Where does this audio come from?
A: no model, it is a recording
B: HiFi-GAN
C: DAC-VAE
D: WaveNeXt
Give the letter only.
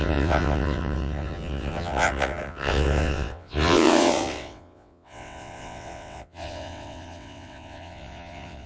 D